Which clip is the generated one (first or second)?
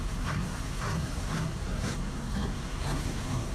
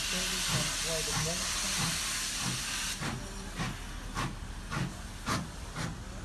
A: first